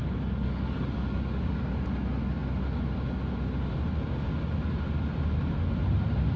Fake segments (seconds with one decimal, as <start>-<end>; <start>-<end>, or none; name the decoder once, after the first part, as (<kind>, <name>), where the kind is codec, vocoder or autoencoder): 0.0-1.6 (codec, DAC)